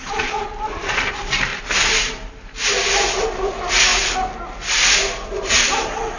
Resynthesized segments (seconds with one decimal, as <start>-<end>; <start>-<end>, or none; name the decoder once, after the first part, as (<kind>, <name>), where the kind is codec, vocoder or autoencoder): 0.0-1.5 (vocoder, BigVGAN v2); 3.3-3.9; 5.5-6.2

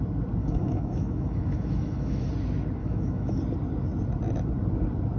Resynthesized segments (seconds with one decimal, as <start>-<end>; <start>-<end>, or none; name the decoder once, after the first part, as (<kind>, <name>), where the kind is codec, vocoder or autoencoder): 0.4-2.3 (autoencoder, DAC-VAE); 2.8-3.4

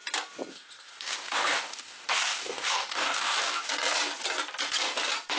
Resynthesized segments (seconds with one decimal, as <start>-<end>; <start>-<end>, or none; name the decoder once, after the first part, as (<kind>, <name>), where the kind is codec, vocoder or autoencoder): 0.5-3.7 (codec, DAC)

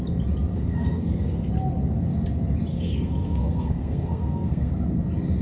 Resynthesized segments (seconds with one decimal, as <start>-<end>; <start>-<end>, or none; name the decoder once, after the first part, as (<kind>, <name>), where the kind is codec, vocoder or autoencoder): 0.5-1.5 (codec, SNAC); 2.7-4.7